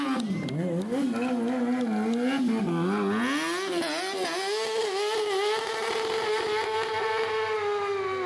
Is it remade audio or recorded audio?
recorded